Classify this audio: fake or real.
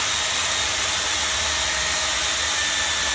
real